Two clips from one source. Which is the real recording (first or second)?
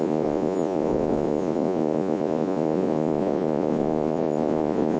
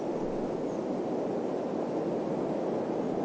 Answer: second